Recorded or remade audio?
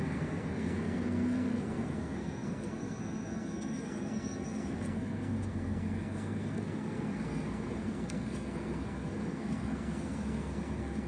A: remade